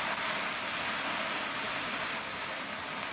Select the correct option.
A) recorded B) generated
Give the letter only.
A